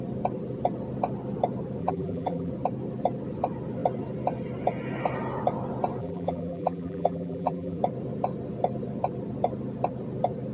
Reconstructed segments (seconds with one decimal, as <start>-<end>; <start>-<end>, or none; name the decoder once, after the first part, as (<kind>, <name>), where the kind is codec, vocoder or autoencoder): 1.8-2.5 (vocoder, BigVGAN v2); 6.0-7.8